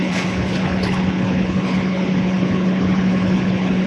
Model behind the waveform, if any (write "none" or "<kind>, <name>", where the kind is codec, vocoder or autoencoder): codec, HILCodec